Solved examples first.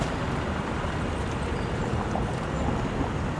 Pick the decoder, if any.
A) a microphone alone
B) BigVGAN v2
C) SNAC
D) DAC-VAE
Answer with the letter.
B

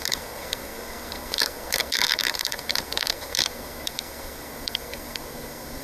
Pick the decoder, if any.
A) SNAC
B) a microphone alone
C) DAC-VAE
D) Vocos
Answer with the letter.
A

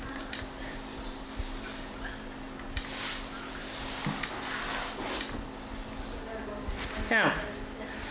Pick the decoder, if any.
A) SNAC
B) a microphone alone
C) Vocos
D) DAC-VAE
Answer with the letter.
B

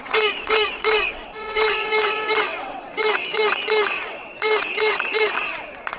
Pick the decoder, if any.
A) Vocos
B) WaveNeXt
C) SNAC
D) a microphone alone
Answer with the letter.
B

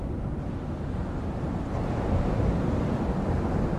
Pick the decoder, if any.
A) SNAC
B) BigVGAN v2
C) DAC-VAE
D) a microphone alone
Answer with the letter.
D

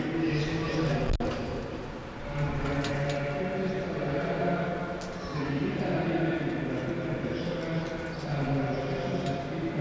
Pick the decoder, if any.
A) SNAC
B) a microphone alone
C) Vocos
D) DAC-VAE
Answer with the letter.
B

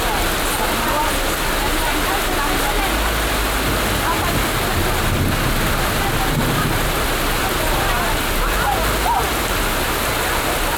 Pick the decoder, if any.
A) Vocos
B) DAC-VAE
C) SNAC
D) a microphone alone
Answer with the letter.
D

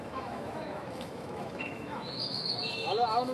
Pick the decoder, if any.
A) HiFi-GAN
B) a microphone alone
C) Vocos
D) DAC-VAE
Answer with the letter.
D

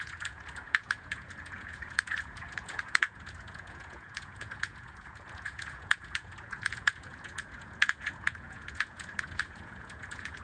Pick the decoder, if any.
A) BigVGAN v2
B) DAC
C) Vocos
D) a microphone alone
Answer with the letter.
C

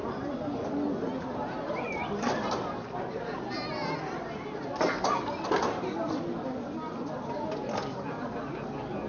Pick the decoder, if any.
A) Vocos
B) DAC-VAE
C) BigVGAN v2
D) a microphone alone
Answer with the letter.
D